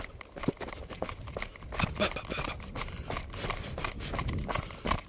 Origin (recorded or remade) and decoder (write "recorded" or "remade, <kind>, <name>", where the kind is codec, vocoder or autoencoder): recorded